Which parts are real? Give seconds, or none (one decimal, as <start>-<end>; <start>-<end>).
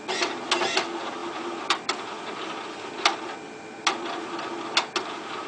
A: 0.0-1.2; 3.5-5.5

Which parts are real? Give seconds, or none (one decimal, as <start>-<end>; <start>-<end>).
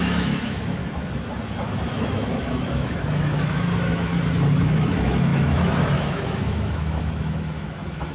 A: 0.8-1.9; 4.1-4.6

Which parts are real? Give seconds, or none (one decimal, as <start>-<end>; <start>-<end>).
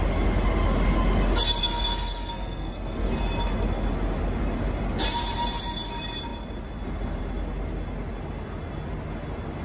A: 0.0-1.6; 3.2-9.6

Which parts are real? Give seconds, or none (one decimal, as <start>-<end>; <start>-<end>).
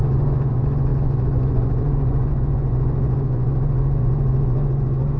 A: none